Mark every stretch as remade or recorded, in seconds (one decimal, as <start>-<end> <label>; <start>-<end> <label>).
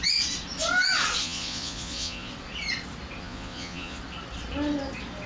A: 0.0-1.2 recorded; 1.2-2.3 remade; 2.3-3.2 recorded; 3.2-4.0 remade; 4.0-5.3 recorded